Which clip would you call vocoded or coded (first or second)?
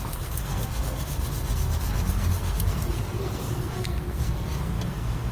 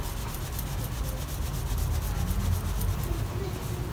first